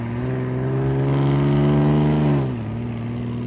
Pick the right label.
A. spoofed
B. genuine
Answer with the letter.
B